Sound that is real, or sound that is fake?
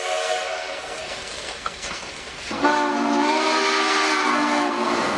fake